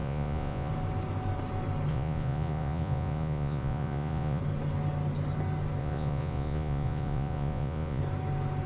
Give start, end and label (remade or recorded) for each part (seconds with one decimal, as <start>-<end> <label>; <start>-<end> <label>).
0.0-0.7 remade; 0.7-1.9 recorded; 1.9-4.4 remade; 4.4-5.8 recorded; 5.8-8.0 remade; 8.0-8.7 recorded